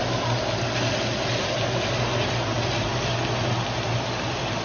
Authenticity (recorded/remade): recorded